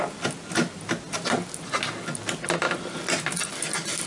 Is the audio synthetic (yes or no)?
no